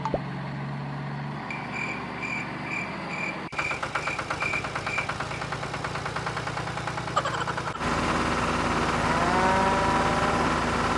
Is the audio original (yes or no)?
yes